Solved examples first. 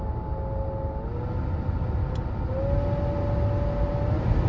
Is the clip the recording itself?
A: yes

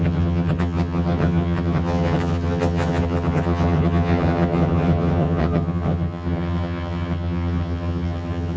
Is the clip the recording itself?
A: no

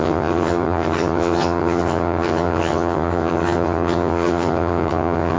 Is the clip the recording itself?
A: no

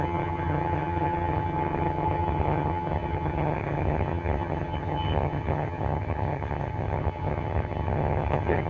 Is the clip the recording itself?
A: no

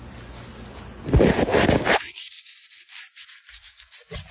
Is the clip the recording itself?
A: yes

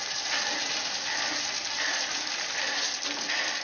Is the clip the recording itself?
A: yes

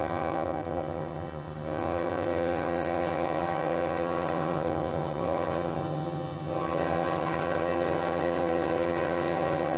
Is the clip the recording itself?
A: no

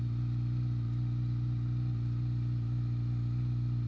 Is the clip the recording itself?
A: yes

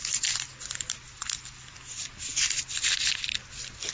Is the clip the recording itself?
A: yes